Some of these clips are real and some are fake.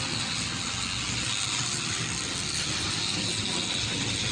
real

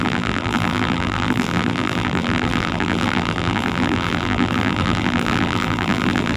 fake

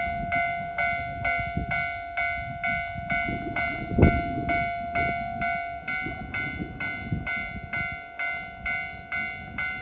real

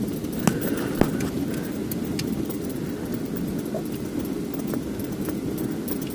real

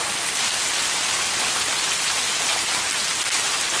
real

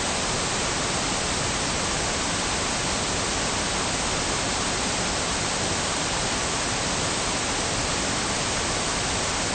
real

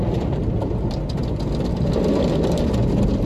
real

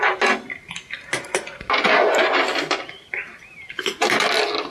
real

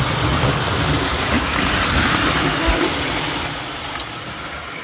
fake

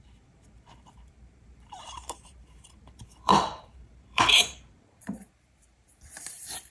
fake